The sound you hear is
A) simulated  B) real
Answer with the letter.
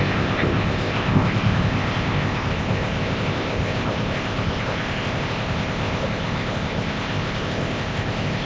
A